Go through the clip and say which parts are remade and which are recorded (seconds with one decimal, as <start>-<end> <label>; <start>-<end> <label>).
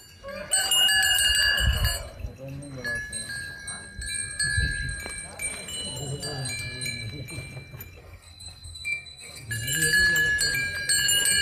0.0-8.0 recorded; 8.0-9.5 remade; 9.5-11.4 recorded